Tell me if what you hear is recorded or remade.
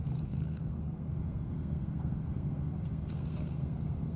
remade